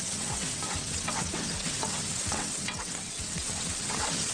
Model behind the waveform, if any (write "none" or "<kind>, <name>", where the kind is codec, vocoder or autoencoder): vocoder, WaveNeXt